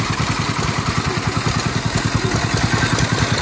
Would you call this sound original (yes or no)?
yes